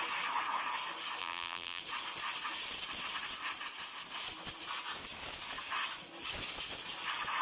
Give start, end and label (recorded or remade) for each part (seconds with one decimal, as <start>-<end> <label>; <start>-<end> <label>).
0.0-1.2 recorded; 1.2-1.8 remade; 1.8-7.4 recorded